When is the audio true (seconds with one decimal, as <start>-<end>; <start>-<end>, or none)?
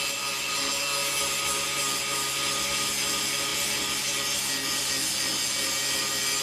0.0-6.4